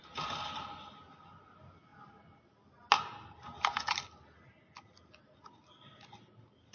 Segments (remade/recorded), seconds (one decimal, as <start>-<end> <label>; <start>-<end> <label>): 0.0-6.7 recorded